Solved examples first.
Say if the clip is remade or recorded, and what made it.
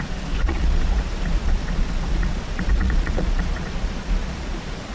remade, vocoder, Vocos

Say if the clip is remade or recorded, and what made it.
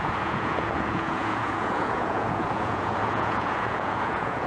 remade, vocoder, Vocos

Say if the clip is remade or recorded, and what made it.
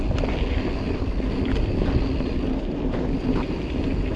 recorded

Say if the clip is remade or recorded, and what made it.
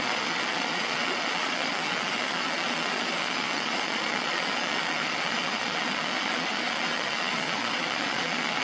remade, vocoder, Vocos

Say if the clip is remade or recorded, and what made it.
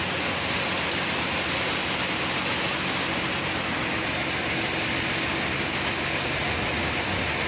recorded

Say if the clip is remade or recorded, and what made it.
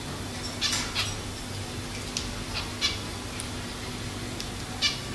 recorded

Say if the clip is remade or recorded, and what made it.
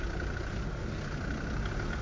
recorded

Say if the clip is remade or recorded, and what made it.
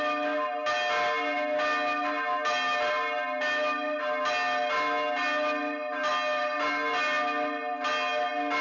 recorded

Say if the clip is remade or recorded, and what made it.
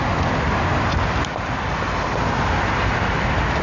recorded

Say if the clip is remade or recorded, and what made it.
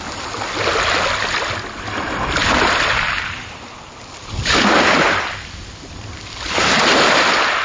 recorded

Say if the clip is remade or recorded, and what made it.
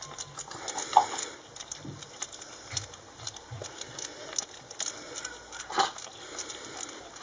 recorded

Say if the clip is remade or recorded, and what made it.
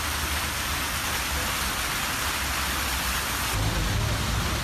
recorded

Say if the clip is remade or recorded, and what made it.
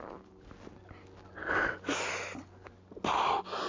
recorded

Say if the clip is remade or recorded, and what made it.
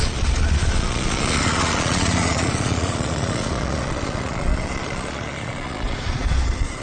remade, vocoder, Vocos